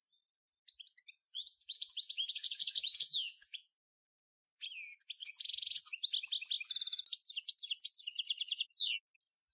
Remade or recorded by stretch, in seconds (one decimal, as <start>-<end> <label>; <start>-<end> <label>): 0.0-1.2 recorded; 1.2-3.8 remade; 3.8-5.2 recorded; 5.2-5.8 remade; 5.8-9.5 recorded

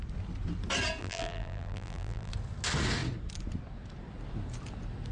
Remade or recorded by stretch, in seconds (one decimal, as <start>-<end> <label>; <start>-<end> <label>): 0.0-1.0 recorded; 1.0-2.3 remade; 2.3-5.1 recorded

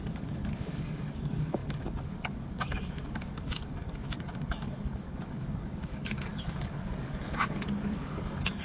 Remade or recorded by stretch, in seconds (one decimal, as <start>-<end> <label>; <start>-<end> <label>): 0.0-8.6 remade

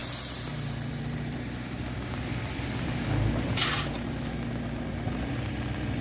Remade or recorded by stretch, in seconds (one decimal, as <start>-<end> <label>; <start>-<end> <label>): 0.0-0.5 remade; 0.5-0.9 recorded; 0.9-3.0 remade; 3.0-6.0 recorded